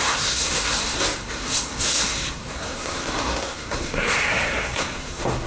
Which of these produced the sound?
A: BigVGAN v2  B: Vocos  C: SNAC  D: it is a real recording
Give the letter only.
C